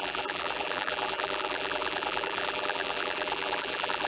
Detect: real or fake fake